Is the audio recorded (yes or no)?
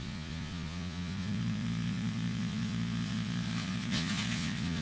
no